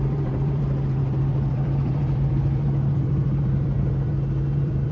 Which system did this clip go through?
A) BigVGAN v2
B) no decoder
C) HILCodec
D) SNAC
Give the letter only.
A